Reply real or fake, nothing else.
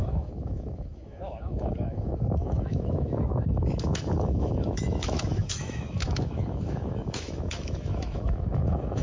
fake